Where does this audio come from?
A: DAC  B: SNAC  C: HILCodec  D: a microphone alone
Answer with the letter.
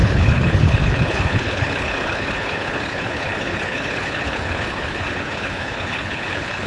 C